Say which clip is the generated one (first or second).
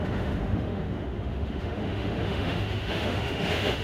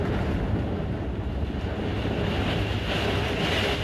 first